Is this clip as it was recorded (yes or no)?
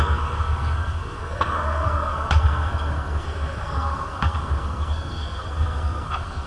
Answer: no